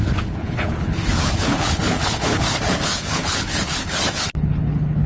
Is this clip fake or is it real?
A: fake